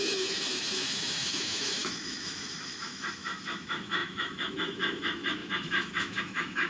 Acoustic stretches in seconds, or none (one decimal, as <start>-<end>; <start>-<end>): none